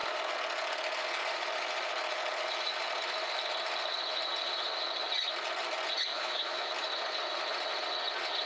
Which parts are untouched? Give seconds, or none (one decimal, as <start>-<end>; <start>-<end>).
0.0-6.1; 6.7-8.5